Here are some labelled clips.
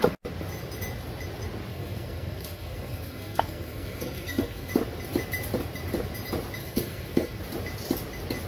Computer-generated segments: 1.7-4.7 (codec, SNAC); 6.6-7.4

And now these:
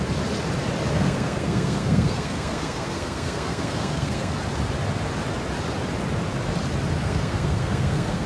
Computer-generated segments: 0.9-4.3 (codec, SNAC); 7.0-8.3

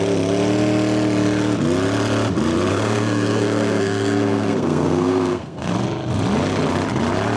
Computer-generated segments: 2.7-5.7 (codec, SNAC)

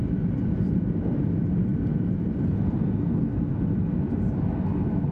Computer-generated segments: none

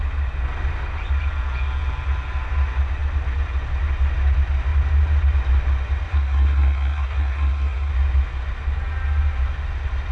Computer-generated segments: 6.1-7.9 (codec, SNAC)

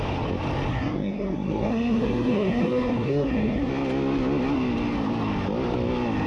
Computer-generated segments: 0.7-3.7 (codec, SNAC)